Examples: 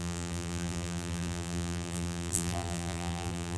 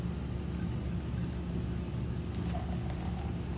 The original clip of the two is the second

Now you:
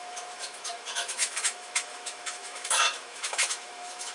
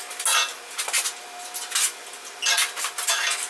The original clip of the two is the second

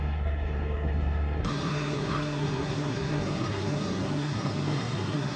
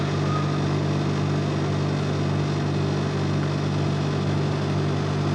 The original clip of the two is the second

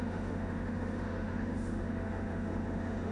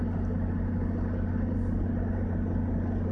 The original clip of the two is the second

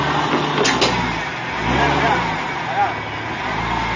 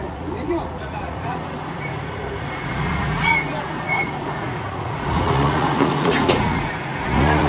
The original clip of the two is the first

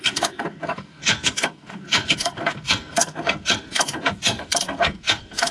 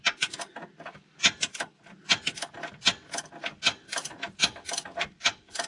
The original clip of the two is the second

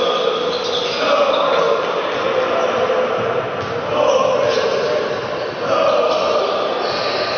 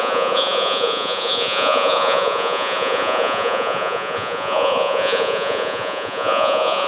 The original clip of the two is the first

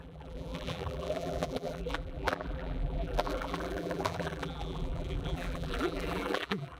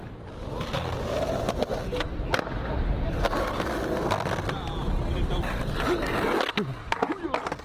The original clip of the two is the second